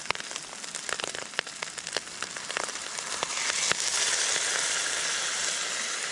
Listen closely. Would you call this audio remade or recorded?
recorded